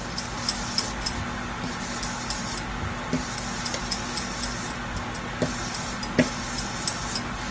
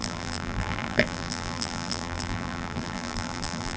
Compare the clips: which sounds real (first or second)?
first